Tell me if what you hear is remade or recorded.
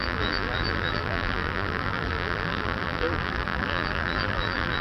remade